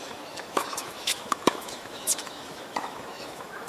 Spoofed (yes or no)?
yes